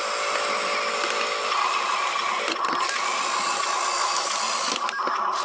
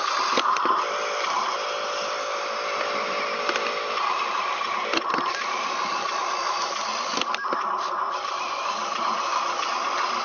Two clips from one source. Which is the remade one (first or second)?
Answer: second